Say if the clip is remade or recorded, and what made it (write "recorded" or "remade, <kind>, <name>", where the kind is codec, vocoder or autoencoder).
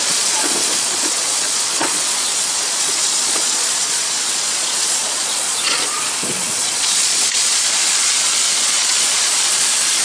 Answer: remade, vocoder, Vocos